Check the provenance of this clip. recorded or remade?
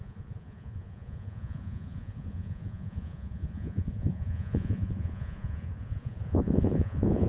remade